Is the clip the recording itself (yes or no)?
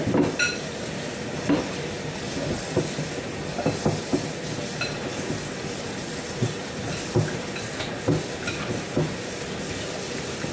yes